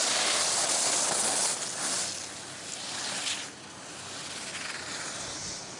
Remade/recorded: recorded